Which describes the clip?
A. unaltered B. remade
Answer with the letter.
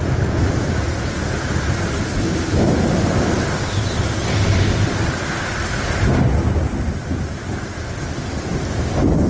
A